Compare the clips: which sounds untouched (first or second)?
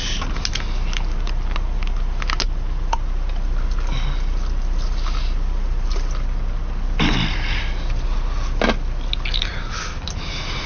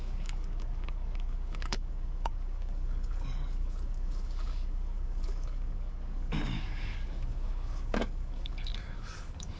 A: first